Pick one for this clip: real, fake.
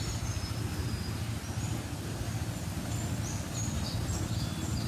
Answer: real